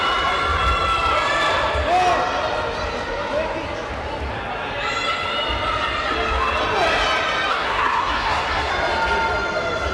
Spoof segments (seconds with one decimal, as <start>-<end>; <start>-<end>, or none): 7.5-8.7

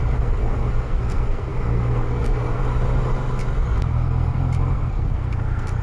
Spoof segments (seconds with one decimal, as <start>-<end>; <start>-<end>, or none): 0.0-2.6; 3.6-5.8

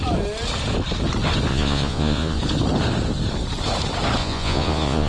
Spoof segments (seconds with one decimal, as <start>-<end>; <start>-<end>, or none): 1.5-2.4; 4.2-5.1

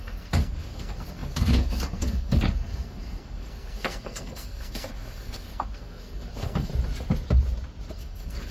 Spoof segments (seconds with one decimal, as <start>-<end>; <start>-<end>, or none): 0.0-6.7; 7.9-8.5